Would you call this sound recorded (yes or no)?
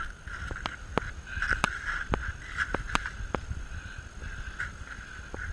yes